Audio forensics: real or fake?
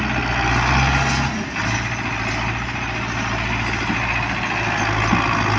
real